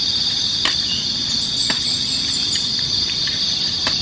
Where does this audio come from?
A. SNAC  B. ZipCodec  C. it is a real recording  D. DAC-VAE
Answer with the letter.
C